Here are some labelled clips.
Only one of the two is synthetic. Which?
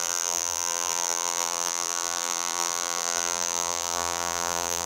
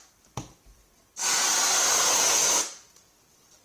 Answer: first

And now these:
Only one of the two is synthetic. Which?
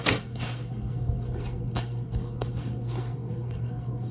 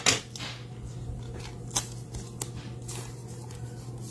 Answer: first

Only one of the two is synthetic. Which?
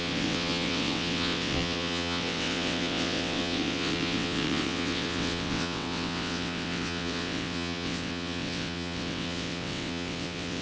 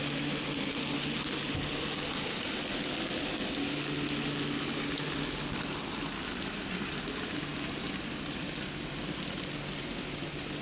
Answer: first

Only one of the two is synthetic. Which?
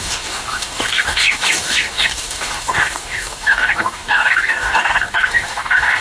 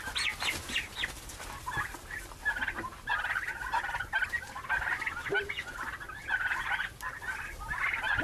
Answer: first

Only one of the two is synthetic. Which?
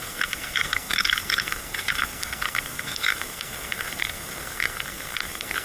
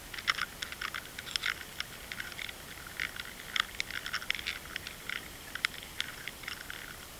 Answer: first